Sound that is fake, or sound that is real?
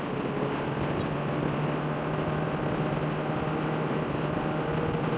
real